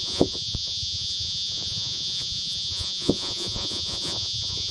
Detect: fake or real fake